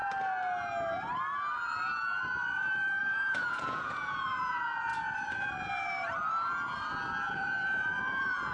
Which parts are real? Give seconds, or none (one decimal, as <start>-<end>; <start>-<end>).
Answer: 0.0-3.0; 4.9-7.2